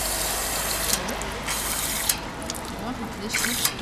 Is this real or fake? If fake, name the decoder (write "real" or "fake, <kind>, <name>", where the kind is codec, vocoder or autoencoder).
real